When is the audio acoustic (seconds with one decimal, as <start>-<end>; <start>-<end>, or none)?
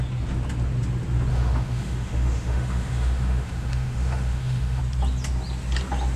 0.0-1.3; 4.8-6.2